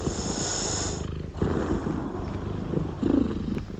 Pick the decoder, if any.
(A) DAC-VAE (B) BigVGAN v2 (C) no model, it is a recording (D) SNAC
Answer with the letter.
C